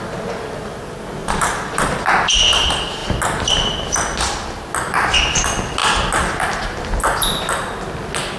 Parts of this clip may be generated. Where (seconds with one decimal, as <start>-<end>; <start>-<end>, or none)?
1.2-2.0